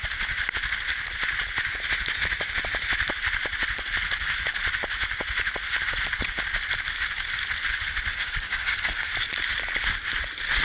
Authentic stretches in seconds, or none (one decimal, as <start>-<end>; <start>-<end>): 0.0-8.1; 9.1-10.6